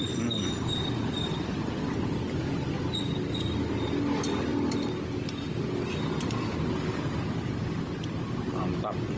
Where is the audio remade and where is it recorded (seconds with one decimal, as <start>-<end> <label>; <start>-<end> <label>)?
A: 0.0-9.2 recorded